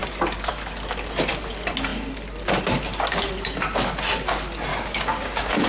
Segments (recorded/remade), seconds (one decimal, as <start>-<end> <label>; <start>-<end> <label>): 0.0-4.7 recorded; 4.7-5.7 remade